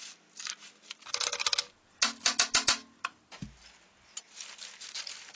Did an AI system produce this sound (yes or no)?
no